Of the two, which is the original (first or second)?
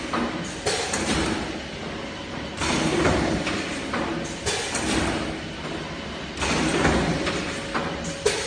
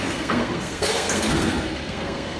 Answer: first